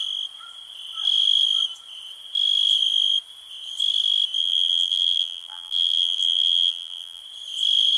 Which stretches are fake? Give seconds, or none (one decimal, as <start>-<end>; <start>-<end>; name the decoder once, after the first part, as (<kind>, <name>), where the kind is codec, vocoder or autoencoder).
4.4-7.2 (vocoder, BigVGAN v2)